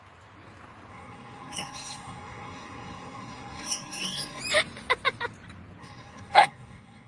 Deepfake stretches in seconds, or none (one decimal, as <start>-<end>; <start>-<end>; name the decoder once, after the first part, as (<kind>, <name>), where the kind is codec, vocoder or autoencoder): 0.9-4.4 (codec, SNAC); 5.8-7.1